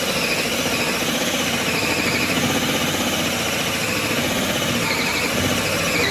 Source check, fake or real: real